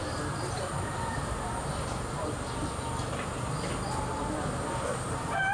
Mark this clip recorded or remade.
recorded